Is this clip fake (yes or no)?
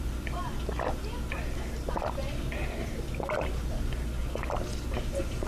no